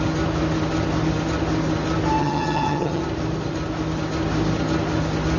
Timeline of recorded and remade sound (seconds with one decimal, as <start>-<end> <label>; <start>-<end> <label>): 0.0-2.2 recorded; 2.2-3.0 remade; 3.0-5.4 recorded

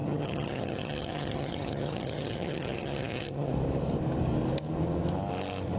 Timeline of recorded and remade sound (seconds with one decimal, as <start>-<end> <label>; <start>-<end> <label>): 0.0-3.5 remade; 3.5-5.8 recorded

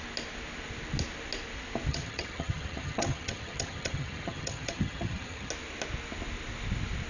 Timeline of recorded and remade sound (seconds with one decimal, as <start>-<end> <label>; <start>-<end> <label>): 0.0-1.9 recorded; 1.9-5.5 remade; 5.5-7.1 recorded